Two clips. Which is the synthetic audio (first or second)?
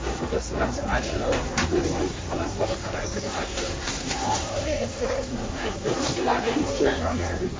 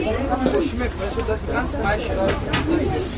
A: first